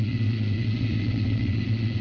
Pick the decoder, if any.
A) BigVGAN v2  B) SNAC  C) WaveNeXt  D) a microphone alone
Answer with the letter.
C